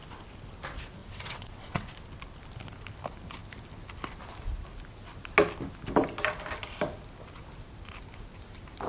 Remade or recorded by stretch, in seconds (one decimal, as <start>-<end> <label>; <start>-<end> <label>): 0.0-1.0 recorded; 1.0-1.9 remade; 1.9-8.9 recorded

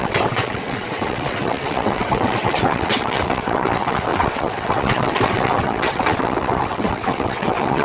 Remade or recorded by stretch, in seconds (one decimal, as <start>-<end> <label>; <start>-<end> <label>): 0.0-7.8 remade

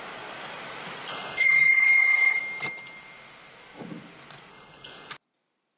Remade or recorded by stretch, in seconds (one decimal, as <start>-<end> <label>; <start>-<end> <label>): 0.0-1.1 recorded; 1.1-2.4 remade; 2.4-4.5 recorded; 4.5-5.1 remade; 5.1-5.8 recorded

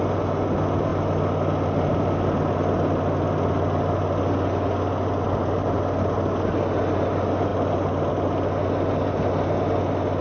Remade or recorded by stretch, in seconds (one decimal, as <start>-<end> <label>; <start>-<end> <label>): 0.0-10.2 recorded

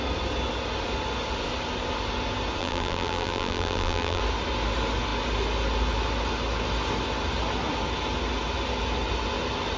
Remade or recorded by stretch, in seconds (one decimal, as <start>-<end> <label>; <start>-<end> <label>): 0.0-2.6 recorded; 2.6-4.2 remade; 4.2-9.8 recorded